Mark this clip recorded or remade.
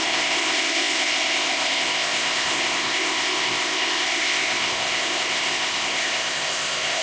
remade